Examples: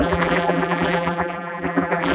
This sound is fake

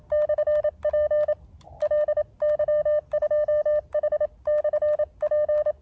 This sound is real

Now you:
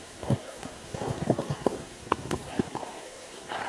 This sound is fake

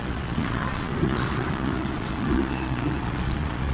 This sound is fake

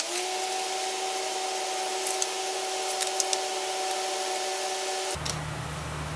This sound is real